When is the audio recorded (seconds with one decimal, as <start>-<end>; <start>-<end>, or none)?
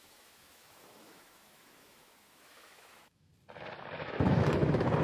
3.3-4.0